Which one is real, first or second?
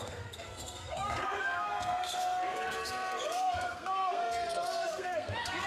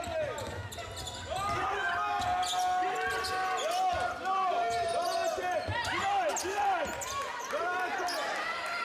second